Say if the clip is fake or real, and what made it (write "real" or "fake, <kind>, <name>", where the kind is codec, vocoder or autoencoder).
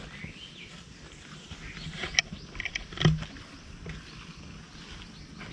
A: real